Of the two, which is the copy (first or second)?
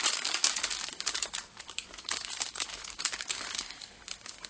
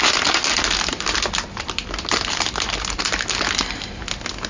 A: first